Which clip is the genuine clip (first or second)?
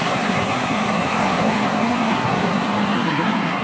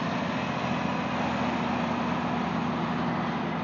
second